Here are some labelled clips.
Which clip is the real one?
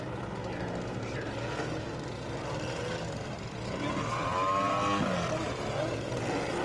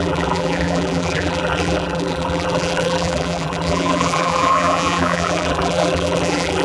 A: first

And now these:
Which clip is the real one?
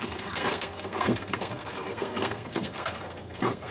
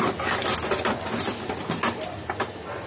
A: second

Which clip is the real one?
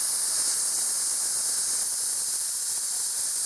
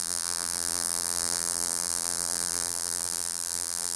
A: first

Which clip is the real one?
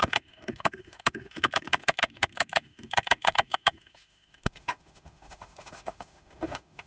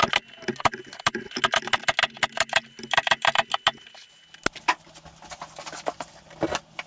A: second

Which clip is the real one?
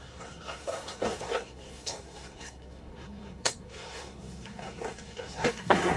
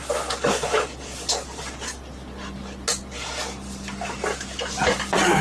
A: second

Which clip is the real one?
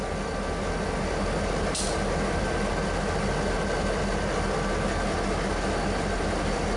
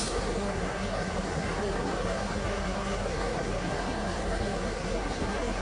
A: first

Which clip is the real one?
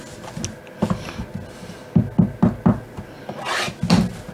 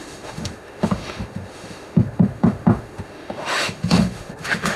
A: first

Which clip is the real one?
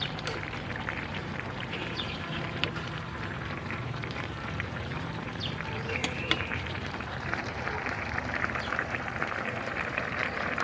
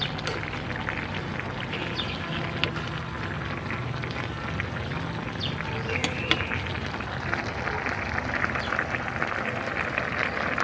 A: second